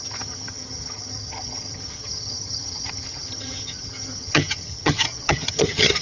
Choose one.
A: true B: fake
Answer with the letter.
B